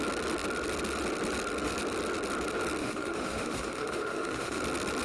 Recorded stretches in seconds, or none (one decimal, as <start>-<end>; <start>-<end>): 0.0-2.8; 4.6-5.0